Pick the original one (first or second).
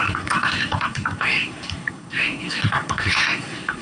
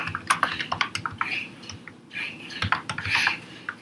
second